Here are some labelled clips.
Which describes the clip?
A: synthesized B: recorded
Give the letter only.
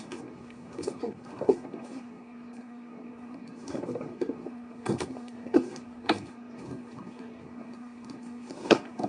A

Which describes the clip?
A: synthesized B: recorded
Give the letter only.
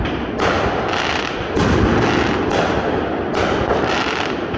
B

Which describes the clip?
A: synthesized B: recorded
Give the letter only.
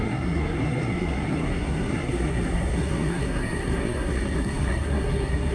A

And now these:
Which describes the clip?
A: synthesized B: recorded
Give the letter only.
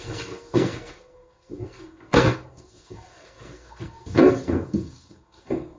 A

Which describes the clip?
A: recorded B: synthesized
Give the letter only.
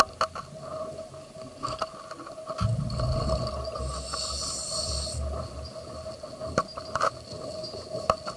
A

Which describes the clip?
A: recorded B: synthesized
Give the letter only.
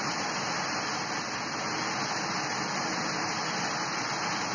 A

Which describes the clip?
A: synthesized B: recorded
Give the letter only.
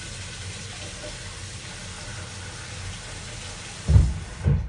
B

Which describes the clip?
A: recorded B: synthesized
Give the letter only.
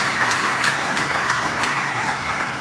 B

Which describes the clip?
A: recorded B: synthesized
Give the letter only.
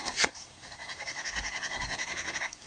B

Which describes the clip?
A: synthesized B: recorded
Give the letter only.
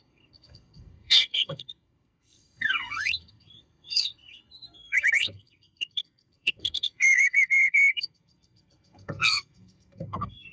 A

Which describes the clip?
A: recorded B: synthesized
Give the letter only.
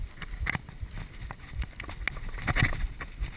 A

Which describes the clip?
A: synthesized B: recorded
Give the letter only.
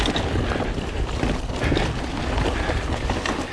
B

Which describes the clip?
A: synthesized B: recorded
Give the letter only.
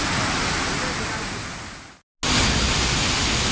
B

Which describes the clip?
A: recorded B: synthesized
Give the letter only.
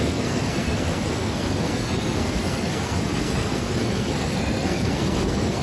B